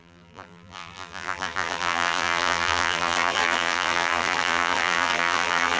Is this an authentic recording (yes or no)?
no